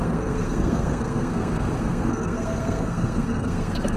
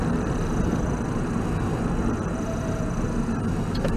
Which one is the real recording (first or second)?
second